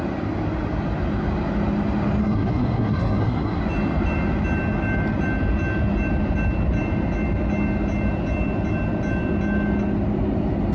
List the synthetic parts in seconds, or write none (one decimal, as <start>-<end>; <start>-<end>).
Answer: 2.2-3.6